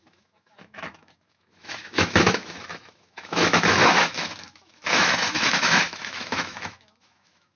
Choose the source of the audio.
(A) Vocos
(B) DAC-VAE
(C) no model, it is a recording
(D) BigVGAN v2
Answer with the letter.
B